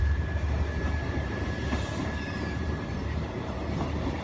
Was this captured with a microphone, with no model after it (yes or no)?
no